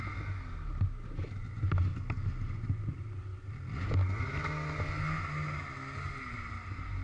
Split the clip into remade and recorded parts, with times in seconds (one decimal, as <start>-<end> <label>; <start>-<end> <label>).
0.0-7.0 recorded